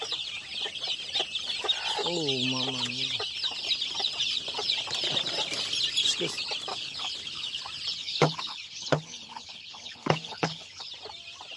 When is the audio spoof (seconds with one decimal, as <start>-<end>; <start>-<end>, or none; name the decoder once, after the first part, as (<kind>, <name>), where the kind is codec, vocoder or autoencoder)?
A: 6.7-7.6 (codec, HILCodec); 8.0-10.9